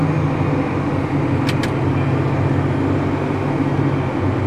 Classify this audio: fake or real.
real